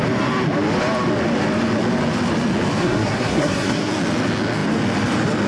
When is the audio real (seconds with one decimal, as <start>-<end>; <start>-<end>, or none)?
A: 0.0-2.8; 3.9-5.5